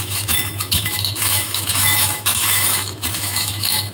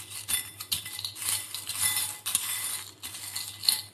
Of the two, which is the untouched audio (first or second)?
second